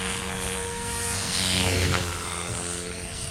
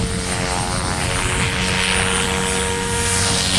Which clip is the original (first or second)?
second